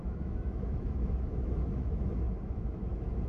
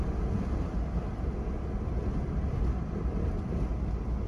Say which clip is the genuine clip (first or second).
second